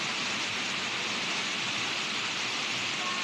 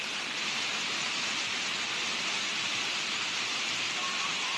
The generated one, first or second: second